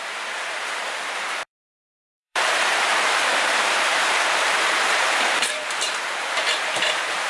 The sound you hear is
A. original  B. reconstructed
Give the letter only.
B